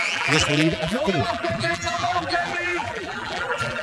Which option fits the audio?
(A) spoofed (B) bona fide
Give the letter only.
A